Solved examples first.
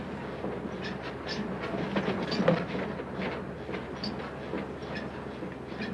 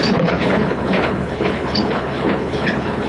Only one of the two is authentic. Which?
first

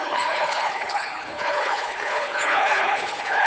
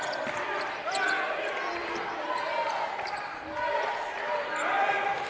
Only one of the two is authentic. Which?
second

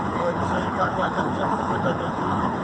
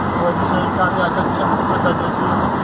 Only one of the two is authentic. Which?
second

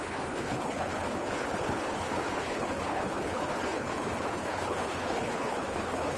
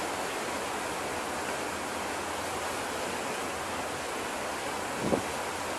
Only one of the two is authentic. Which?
second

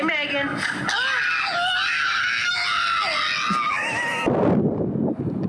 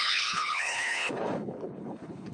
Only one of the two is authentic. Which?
first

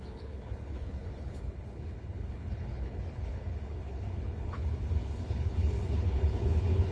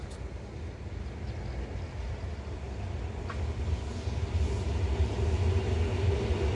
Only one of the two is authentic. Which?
second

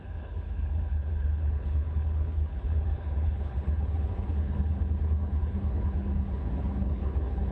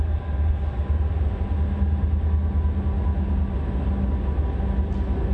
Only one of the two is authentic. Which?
second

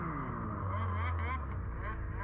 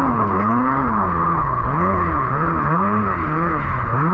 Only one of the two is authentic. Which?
first